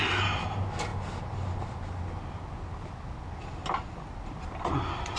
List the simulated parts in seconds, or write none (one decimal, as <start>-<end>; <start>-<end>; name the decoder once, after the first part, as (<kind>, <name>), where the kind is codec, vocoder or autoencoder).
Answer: none